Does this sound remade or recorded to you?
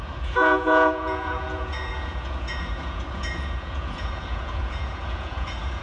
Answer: remade